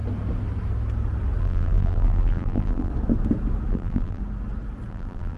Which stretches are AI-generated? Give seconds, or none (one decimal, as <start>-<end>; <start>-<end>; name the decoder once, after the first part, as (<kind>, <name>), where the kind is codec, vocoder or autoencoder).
1.4-2.9 (vocoder, BigVGAN v2); 3.7-4.2; 4.9-5.4